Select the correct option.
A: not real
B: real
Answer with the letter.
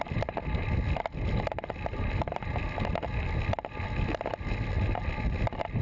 B